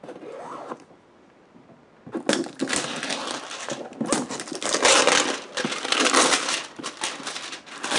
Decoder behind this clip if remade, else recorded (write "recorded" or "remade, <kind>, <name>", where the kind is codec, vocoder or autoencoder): recorded